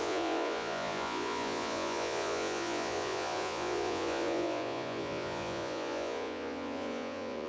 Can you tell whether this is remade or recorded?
remade